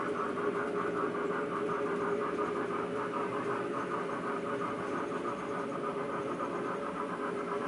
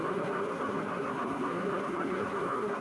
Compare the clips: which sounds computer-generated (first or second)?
second